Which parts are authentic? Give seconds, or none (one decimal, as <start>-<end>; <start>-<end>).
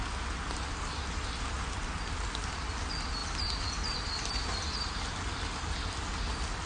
0.0-6.7